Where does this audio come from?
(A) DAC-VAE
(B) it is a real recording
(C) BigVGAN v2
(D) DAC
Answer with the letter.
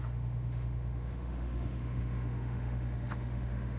A